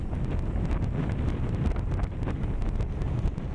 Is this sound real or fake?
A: real